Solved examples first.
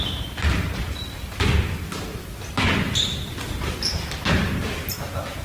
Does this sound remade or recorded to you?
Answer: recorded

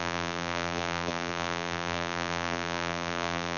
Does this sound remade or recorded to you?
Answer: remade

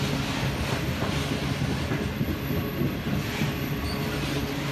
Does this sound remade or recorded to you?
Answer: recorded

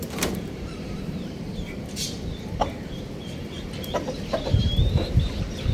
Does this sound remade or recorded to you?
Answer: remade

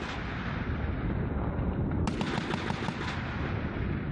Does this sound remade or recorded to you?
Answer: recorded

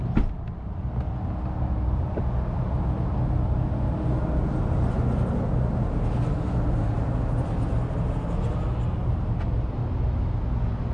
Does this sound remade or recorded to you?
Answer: recorded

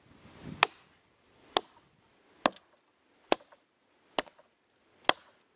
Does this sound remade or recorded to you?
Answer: recorded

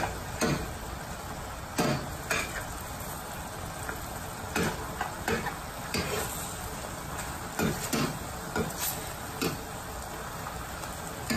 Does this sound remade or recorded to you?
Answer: recorded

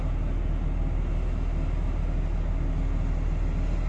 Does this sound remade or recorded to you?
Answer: recorded